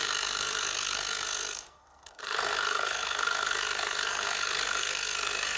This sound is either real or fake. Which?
fake